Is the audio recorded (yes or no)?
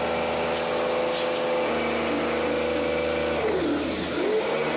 yes